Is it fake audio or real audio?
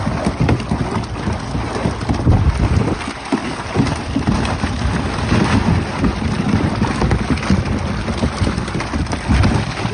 real